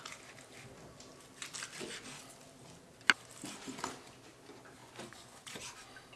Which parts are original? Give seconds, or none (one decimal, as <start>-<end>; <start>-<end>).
0.0-4.8; 5.6-6.2